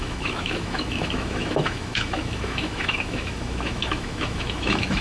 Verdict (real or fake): fake